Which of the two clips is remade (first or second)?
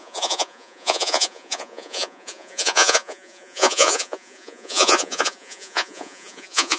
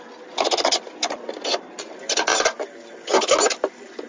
first